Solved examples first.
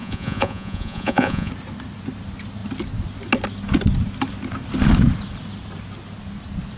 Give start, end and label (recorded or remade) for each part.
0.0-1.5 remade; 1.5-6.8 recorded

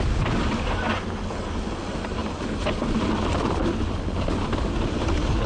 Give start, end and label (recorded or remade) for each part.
0.0-5.5 recorded

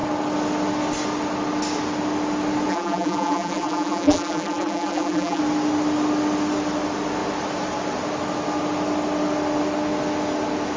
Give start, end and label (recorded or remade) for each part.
0.0-2.7 recorded; 2.7-5.4 remade; 5.4-10.8 recorded

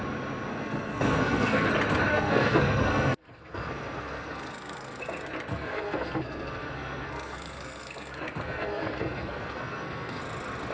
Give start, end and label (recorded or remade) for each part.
0.0-0.5 recorded; 0.5-1.7 remade; 1.7-2.1 recorded; 2.1-5.0 remade; 5.0-5.5 recorded; 5.5-10.2 remade; 10.2-10.7 recorded

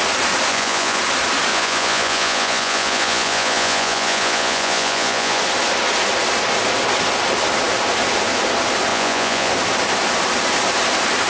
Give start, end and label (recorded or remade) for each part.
0.0-0.5 recorded; 0.5-1.0 remade; 1.0-1.5 recorded; 1.5-5.4 remade; 5.4-8.9 recorded; 8.9-9.5 remade; 9.5-11.3 recorded